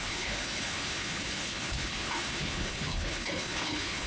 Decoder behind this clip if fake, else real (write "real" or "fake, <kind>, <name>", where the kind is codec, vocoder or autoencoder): fake, codec, HILCodec